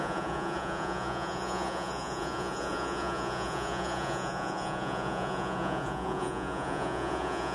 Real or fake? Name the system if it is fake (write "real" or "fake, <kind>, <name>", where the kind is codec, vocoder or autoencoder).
fake, vocoder, Vocos